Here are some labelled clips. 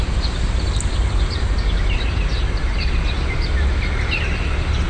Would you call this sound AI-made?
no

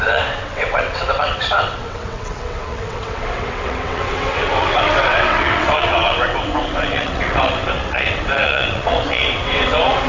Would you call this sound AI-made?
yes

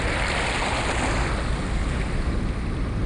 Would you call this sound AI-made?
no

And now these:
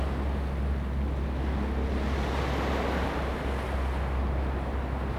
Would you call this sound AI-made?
no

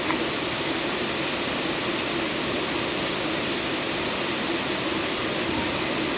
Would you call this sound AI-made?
no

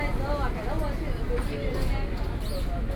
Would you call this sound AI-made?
no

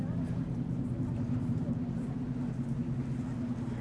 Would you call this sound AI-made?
no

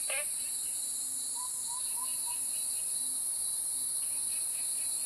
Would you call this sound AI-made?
no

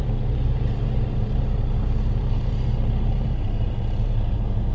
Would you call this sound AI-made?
yes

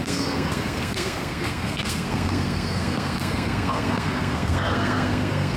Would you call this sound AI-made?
yes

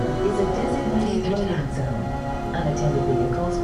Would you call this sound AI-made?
no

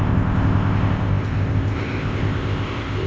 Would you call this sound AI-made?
yes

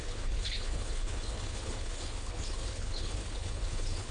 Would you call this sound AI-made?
yes